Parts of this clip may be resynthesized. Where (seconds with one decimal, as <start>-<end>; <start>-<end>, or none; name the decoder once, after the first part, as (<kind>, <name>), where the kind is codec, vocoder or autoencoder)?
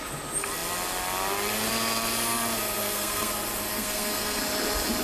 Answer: 2.8-3.3 (codec, SNAC); 3.7-4.4